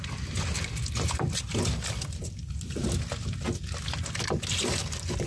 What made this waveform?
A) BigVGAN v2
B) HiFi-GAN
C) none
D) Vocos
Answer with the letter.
C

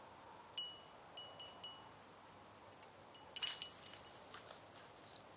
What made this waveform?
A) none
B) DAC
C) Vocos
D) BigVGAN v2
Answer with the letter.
A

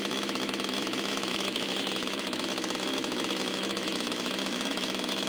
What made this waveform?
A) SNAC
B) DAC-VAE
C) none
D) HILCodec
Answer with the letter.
B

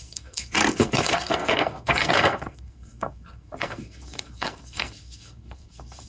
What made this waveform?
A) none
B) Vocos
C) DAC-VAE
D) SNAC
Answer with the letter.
D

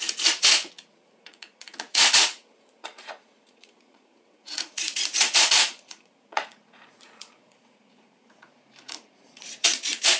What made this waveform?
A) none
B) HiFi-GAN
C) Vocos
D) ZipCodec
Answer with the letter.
C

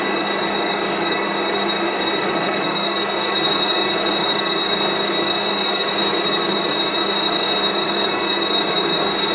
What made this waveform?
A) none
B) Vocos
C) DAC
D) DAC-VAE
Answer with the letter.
C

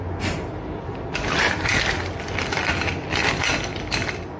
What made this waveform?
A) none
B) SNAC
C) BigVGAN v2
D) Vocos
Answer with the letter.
A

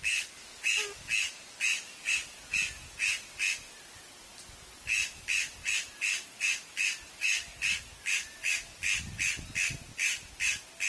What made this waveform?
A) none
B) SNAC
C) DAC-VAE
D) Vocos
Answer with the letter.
A